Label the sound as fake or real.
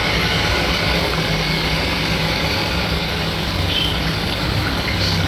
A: fake